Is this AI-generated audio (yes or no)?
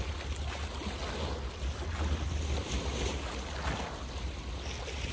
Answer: no